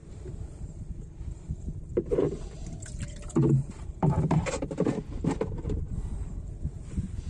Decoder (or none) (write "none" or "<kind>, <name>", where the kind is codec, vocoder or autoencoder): vocoder, BigVGAN v2